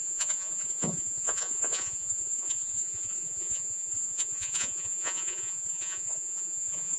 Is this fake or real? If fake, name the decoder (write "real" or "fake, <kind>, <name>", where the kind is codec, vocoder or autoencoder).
fake, vocoder, Vocos